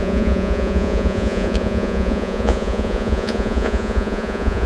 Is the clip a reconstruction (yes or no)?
yes